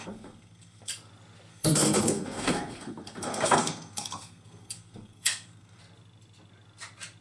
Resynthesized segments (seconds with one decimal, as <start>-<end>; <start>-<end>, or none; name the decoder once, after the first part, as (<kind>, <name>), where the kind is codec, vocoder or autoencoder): 0.0-0.9 (codec, SNAC); 1.5-5.8